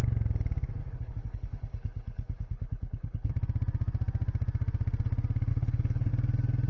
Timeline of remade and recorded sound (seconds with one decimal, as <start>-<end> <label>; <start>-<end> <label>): 0.0-0.8 recorded; 0.8-3.3 remade; 3.3-5.5 recorded; 5.5-6.1 remade; 6.1-6.7 recorded